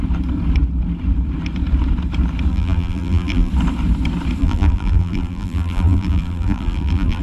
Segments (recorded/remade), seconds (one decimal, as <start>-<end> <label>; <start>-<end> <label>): 0.0-2.5 recorded; 2.5-3.5 remade; 3.5-4.4 recorded; 4.4-7.2 remade